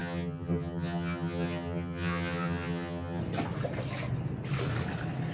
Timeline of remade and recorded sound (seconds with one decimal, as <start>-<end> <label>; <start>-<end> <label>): 0.0-3.2 remade; 3.2-5.3 recorded